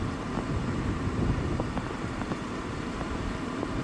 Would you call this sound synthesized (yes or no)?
yes